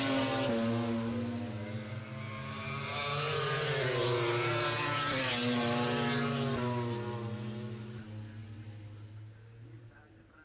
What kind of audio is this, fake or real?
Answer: real